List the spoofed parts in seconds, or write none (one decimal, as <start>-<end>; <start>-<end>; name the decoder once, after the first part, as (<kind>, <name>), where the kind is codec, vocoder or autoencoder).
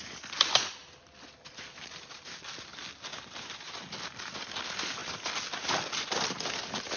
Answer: 3.1-3.7 (vocoder, BigVGAN v2)